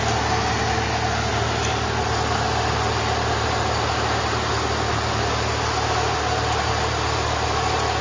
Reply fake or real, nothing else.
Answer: real